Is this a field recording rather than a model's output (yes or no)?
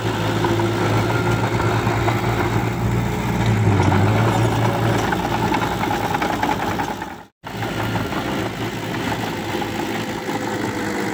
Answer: yes